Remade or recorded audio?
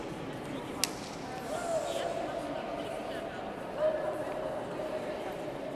recorded